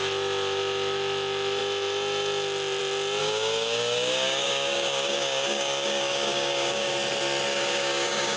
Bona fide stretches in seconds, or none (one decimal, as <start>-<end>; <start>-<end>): 0.0-3.2; 6.9-7.5